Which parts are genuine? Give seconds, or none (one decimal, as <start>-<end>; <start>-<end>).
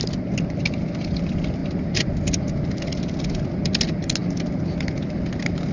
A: 0.0-5.7